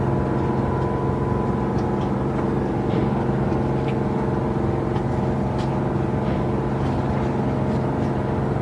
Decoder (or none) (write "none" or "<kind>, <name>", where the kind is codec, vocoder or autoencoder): none